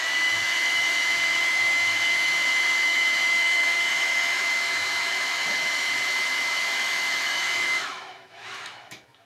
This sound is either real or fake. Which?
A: fake